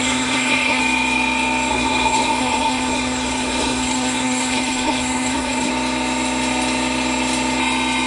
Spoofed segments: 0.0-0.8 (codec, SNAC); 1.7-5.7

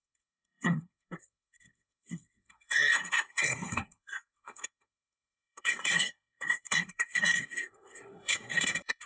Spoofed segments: 0.0-9.1 (codec, SNAC)

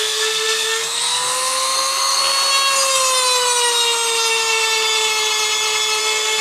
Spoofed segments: 0.0-2.2 (codec, SNAC); 6.0-6.4

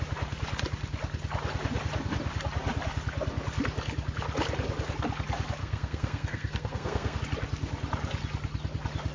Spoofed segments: 5.6-7.2 (codec, SNAC)

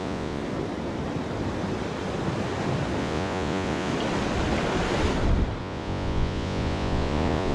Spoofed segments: 0.0-0.4 (vocoder, Vocos); 3.0-3.9; 5.6-7.5

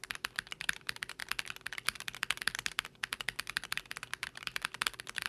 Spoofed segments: none

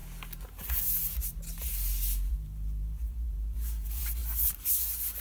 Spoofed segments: 2.3-4.2 (vocoder, BigVGAN v2); 4.7-5.2